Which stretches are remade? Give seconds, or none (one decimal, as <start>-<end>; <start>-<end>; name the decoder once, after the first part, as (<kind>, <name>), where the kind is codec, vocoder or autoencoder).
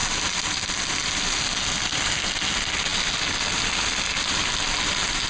none